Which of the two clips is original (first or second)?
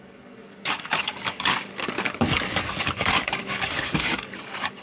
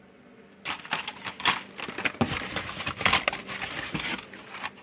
second